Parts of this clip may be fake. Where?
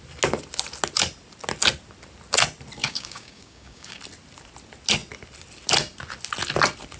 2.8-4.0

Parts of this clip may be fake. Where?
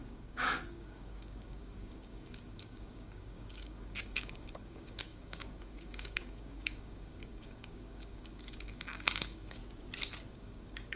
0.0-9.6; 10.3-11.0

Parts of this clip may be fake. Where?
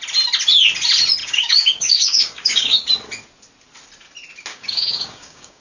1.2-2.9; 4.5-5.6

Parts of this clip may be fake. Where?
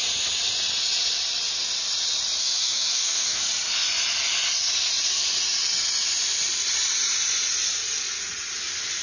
2.4-3.4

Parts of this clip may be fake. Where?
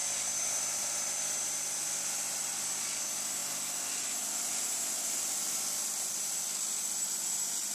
none